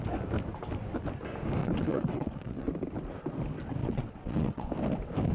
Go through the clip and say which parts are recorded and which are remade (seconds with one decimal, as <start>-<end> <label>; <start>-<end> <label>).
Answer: 0.0-1.6 recorded; 1.6-2.7 remade; 2.7-3.8 recorded; 3.8-4.7 remade; 4.7-5.3 recorded